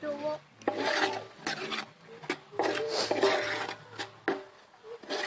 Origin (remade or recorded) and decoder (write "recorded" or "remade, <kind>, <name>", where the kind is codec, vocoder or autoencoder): recorded